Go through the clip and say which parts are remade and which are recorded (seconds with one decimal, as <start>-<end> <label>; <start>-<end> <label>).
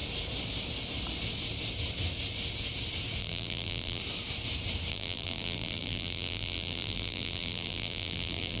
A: 0.0-3.2 recorded; 3.2-4.0 remade; 4.0-4.9 recorded; 4.9-8.6 remade